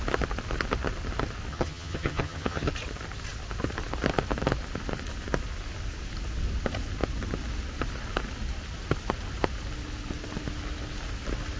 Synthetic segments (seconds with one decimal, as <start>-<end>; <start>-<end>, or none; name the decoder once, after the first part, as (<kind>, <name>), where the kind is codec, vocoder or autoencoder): 1.5-2.7 (vocoder, HiFi-GAN)